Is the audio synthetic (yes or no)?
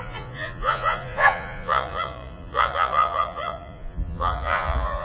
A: yes